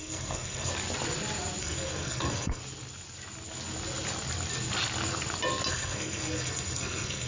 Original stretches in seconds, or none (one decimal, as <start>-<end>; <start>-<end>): 0.7-1.6; 2.6-5.7